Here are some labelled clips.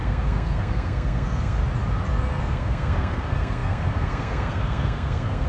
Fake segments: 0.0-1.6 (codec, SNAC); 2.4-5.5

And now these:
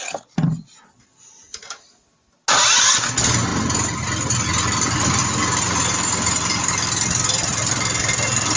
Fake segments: none

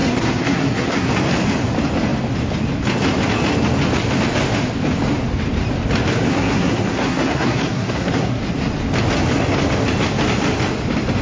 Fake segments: 0.0-1.1 (codec, SNAC); 6.3-8.4

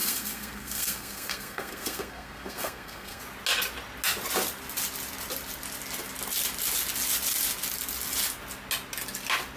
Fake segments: 0.0-3.2 (codec, SNAC)